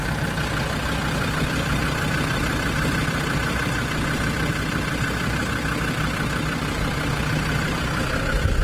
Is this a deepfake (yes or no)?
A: no